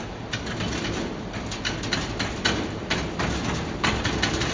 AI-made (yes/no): no